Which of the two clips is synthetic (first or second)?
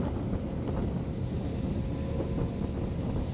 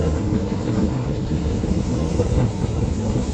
second